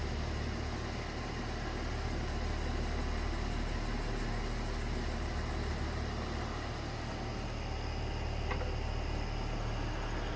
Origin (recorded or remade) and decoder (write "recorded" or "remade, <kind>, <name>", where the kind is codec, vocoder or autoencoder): recorded